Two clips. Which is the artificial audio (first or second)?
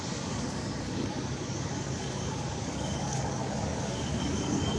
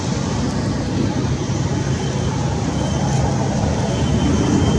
first